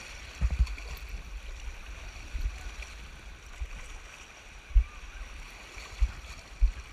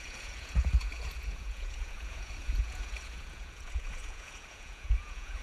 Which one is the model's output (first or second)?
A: second